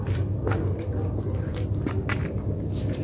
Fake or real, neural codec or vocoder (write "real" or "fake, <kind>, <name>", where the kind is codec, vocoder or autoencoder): real